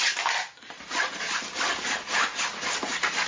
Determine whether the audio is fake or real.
real